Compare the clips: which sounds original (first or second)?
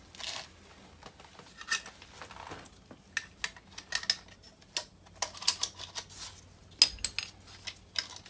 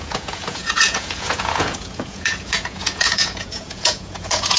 first